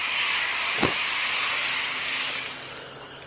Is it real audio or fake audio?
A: real